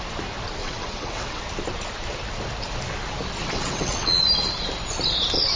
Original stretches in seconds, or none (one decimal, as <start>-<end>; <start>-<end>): 0.0-0.6; 1.4-3.4; 4.2-5.5